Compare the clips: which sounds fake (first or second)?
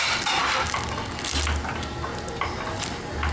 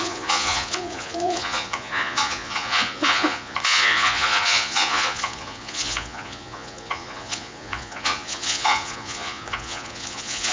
second